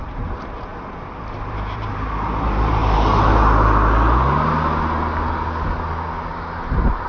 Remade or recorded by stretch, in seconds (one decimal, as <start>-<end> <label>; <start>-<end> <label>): 0.0-2.8 remade; 2.8-7.1 recorded